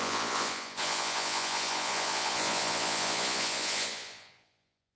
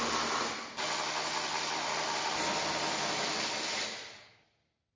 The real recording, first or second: second